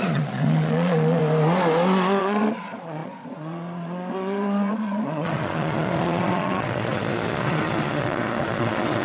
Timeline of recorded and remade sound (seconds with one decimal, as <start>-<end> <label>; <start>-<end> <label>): 0.0-1.2 remade; 1.2-2.2 recorded; 2.2-9.0 remade